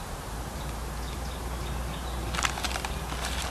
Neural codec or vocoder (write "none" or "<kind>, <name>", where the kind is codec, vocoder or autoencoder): none